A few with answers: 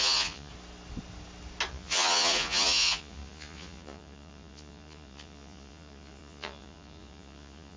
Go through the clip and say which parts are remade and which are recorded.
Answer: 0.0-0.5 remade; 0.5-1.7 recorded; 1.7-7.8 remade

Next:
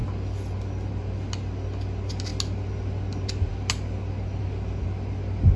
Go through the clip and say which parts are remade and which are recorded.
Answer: 0.0-5.6 recorded